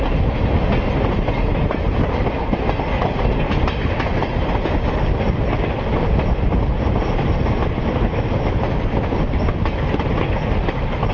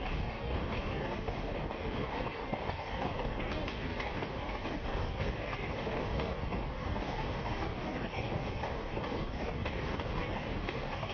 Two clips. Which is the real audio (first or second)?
first